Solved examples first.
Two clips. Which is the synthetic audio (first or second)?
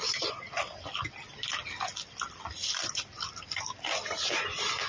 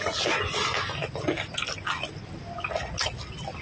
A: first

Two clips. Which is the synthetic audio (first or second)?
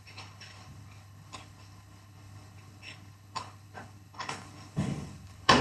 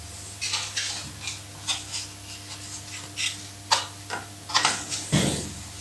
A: first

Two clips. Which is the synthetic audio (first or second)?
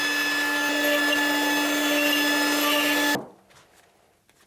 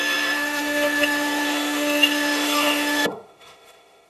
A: second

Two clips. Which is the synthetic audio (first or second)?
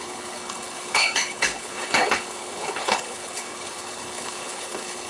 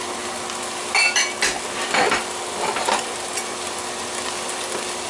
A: first